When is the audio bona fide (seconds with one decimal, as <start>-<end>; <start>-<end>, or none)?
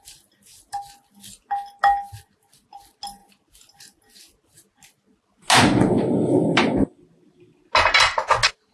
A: 0.0-8.7